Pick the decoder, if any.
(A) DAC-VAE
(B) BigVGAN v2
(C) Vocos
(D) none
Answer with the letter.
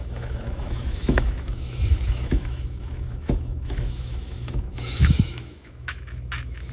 A